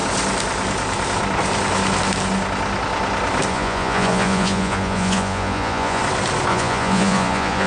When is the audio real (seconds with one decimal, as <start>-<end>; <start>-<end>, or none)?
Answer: 0.0-3.5; 6.0-6.5